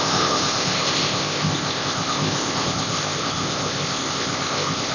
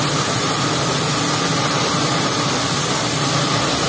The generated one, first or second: first